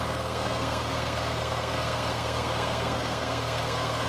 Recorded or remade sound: remade